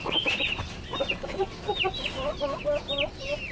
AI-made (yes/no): no